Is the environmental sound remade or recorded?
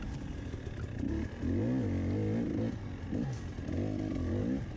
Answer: recorded